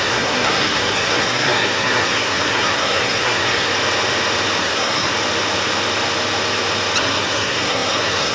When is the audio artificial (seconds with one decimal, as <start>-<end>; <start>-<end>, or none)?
0.0-3.7; 4.6-5.1; 7.0-8.3